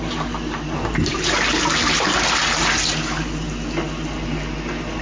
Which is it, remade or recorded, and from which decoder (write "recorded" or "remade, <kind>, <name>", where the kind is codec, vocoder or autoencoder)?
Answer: recorded